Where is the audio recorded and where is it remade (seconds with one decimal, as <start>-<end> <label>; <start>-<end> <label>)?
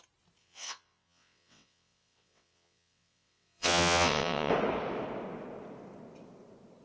0.0-0.4 recorded; 0.4-4.5 remade; 4.5-6.8 recorded